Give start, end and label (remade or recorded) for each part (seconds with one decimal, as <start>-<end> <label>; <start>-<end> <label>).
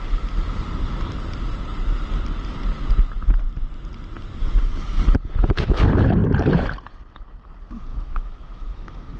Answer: 0.0-7.9 recorded; 7.9-9.2 remade